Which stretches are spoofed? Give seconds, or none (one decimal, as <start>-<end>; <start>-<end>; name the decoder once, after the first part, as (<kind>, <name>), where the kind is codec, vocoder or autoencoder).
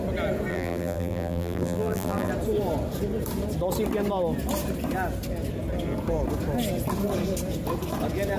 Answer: 0.5-2.3 (vocoder, BigVGAN v2)